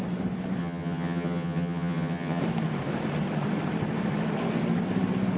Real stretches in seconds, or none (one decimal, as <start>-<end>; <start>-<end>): 0.0-0.6; 2.4-5.4